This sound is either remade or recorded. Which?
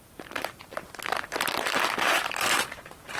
remade